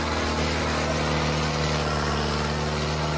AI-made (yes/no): no